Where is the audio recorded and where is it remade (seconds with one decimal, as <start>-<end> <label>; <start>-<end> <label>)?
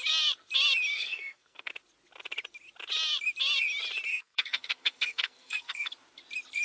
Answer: 0.0-0.9 recorded; 0.9-1.7 remade; 1.7-4.1 recorded; 4.1-5.9 remade; 5.9-6.6 recorded